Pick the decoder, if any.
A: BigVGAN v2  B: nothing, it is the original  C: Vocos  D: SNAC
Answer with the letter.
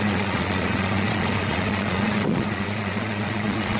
C